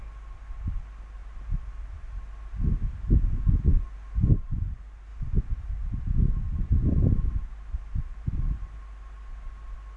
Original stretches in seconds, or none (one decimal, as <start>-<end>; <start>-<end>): 0.0-5.1; 5.7-10.0